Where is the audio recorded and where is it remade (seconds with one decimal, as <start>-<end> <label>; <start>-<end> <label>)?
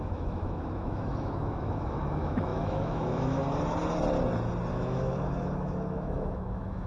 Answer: 0.0-3.4 remade; 3.4-4.7 recorded; 4.7-6.9 remade